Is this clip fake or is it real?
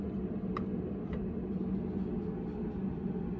real